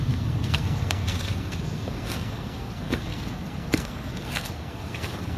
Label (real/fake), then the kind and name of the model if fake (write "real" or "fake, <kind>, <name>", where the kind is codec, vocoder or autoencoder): fake, codec, SNAC